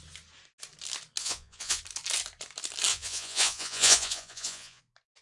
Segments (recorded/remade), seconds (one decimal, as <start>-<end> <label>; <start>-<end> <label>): 0.0-1.2 recorded; 1.2-1.8 remade; 1.8-2.9 recorded; 2.9-4.8 remade; 4.8-5.2 recorded